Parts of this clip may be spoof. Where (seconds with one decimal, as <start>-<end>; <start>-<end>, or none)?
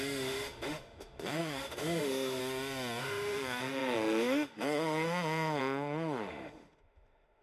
0.0-2.4; 3.0-7.4